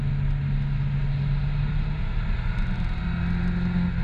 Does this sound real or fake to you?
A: real